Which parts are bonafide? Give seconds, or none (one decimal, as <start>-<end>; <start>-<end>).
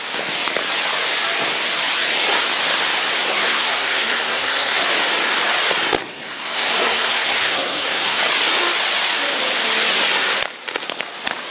0.0-3.3; 4.8-6.0; 8.2-11.5